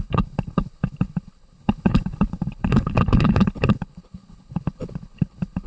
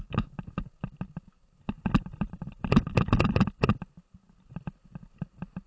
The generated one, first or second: first